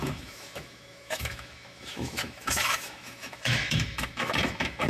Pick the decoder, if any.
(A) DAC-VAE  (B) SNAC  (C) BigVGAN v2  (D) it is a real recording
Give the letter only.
A